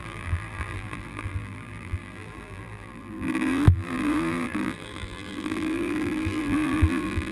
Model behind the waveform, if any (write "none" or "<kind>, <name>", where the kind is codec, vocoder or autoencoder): vocoder, BigVGAN v2